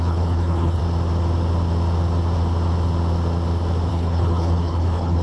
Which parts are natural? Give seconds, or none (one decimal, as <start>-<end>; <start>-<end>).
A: 0.8-3.9